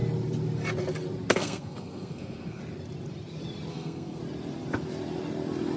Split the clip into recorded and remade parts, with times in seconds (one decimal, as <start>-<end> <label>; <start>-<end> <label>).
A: 0.0-1.3 recorded; 1.3-2.6 remade; 2.6-3.7 recorded; 3.7-4.2 remade; 4.2-5.8 recorded